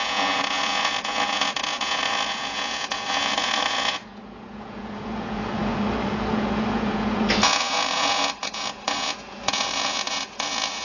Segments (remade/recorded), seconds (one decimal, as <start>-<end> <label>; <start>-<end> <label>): 0.0-10.8 remade